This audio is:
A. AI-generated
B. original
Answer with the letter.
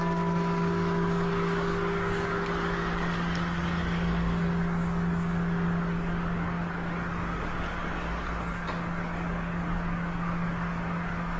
A